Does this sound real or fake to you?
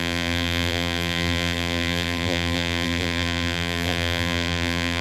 fake